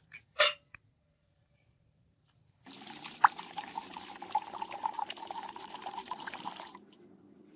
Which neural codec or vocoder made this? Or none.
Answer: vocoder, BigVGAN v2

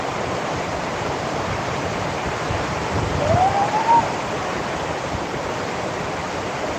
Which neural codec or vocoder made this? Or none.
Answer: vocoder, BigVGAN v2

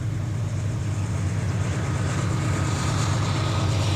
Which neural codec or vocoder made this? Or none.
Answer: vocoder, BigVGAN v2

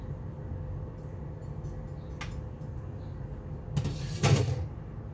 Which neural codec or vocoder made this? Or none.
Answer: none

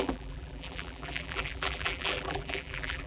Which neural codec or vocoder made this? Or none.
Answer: vocoder, BigVGAN v2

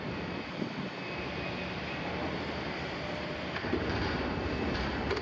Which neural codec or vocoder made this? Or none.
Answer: none